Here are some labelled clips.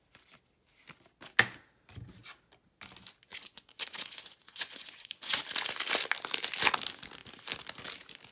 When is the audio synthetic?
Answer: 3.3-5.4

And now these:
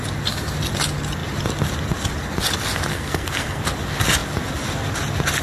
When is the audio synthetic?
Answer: 2.9-3.6

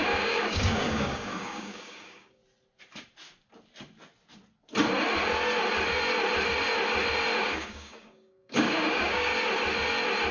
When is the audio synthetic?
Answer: 0.0-2.4; 7.4-9.3

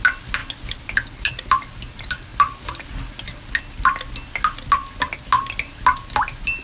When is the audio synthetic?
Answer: none

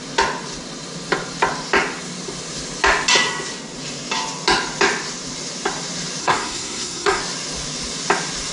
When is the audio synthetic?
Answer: 6.2-7.2